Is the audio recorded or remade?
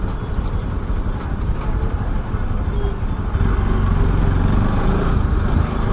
recorded